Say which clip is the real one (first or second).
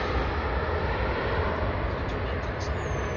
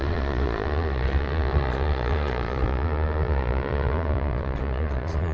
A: first